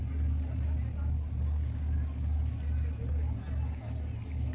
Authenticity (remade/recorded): recorded